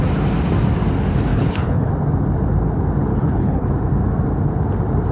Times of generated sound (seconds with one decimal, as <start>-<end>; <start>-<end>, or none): 1.3-1.9; 3.1-3.7